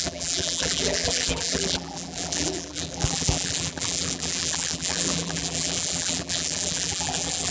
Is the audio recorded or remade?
remade